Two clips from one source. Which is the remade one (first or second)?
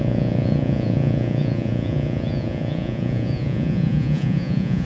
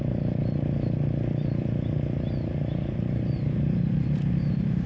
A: first